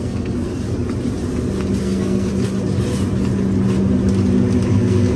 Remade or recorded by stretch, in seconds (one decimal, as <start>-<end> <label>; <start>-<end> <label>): 0.0-0.5 remade; 0.5-1.8 recorded; 1.8-2.3 remade; 2.3-4.7 recorded; 4.7-5.2 remade

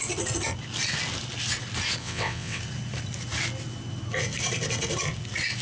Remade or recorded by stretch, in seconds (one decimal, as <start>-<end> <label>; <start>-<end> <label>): 0.0-2.0 recorded; 2.0-2.6 remade; 2.6-5.6 recorded

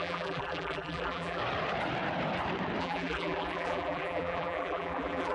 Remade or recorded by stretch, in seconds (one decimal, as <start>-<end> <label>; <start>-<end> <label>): 0.0-1.4 remade; 1.4-2.8 recorded; 2.8-5.3 remade

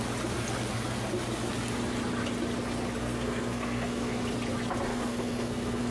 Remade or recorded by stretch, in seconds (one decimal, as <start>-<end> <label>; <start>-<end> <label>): 0.0-3.0 recorded; 3.0-4.2 remade; 4.2-4.9 recorded; 4.9-5.9 remade

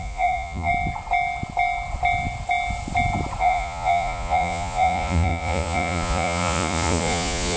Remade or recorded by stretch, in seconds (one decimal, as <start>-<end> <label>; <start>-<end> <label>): 0.0-0.7 remade; 0.7-3.4 recorded; 3.4-7.6 remade

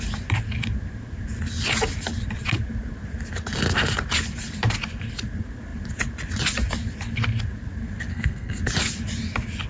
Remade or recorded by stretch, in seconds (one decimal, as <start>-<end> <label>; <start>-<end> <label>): 0.0-8.1 recorded; 8.1-8.6 remade; 8.6-9.7 recorded

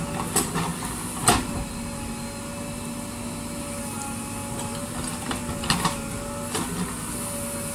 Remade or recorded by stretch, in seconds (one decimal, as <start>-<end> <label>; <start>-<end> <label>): 0.0-7.7 recorded

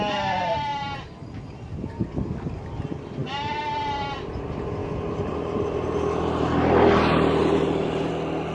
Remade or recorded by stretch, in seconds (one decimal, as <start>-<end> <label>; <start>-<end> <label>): 0.0-0.7 recorded; 0.7-2.1 remade; 2.1-7.4 recorded; 7.4-8.1 remade; 8.1-8.5 recorded